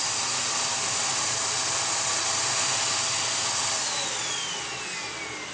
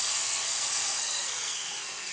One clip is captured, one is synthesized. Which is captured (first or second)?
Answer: first